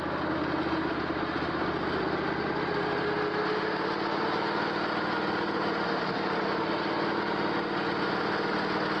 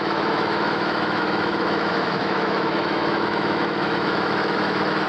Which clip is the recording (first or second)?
first